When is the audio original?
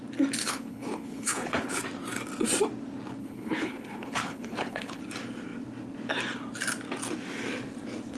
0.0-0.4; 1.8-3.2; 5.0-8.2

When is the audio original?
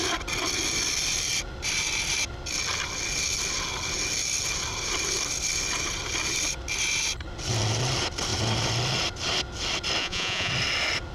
0.0-10.0; 10.5-11.1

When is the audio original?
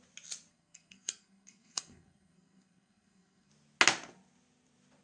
0.0-0.5; 3.5-5.0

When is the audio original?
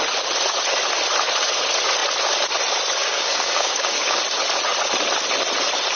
0.0-3.0; 4.2-6.0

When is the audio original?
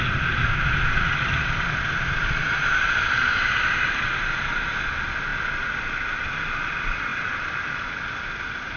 0.0-2.4; 3.7-7.1; 7.9-8.8